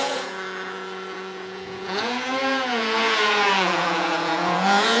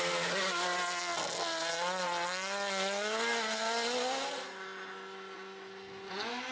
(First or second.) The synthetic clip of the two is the first